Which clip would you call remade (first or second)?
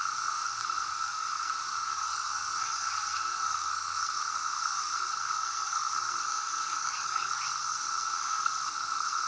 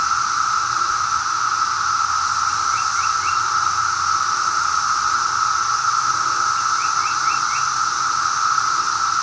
first